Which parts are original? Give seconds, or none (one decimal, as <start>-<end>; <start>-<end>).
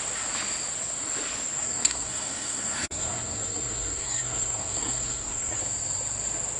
0.0-1.6; 5.6-6.6